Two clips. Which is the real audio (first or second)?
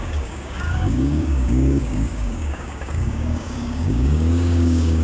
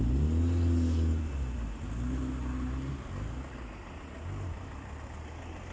second